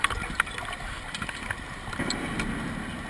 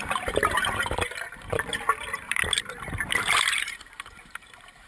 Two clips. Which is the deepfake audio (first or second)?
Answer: second